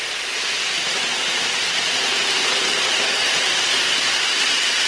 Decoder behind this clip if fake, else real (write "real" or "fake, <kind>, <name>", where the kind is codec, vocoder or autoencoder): real